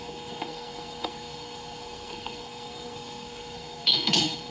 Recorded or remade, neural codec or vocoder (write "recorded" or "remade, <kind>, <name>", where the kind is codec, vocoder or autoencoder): remade, codec, SNAC